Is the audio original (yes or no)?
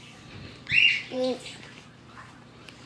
no